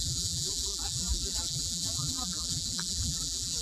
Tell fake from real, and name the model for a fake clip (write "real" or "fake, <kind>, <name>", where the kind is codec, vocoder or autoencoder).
fake, vocoder, BigVGAN v2